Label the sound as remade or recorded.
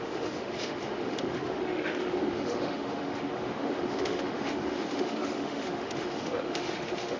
remade